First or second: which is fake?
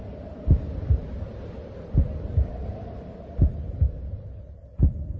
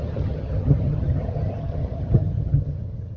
second